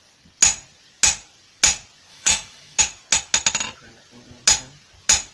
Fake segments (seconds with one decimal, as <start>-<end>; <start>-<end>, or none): 2.1-2.8